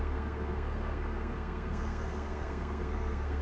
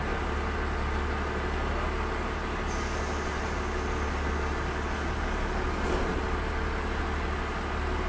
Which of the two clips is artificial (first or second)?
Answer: first